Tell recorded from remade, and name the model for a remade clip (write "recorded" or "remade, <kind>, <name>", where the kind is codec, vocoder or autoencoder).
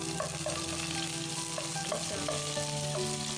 recorded